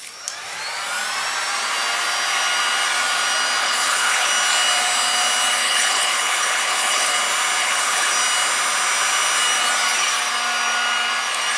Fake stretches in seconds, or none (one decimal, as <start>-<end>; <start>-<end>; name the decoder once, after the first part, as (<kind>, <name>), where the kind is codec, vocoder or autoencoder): 3.6-4.3 (codec, HILCodec); 5.6-7.1; 7.6-8.1